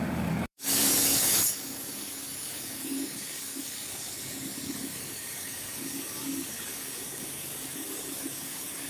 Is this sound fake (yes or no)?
yes